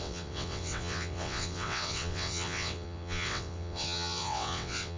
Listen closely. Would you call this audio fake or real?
fake